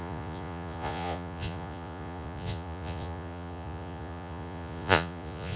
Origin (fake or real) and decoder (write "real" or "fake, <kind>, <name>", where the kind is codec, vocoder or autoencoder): fake, vocoder, Vocos